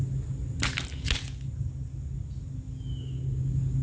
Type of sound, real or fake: real